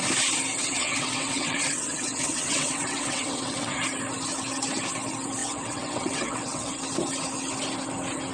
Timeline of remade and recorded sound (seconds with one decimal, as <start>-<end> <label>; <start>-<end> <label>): 0.0-0.6 recorded; 0.6-3.8 remade; 3.8-5.4 recorded; 5.4-6.8 remade; 6.8-8.3 recorded